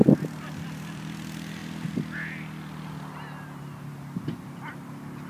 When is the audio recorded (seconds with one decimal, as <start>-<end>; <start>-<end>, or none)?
1.6-3.6